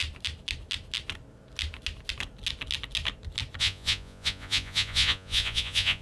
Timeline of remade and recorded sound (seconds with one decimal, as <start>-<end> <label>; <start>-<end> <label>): 0.0-3.6 recorded; 3.6-6.0 remade